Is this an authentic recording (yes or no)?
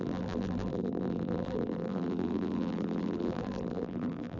no